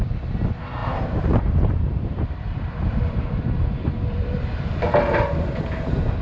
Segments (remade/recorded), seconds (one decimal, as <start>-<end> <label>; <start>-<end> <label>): 0.0-0.8 recorded; 0.8-4.5 remade; 4.5-6.2 recorded